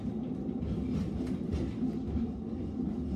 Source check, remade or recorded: recorded